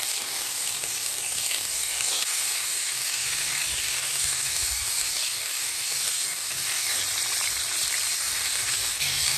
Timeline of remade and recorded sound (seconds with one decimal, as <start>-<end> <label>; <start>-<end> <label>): 0.0-7.0 remade; 7.0-8.1 recorded; 8.1-9.4 remade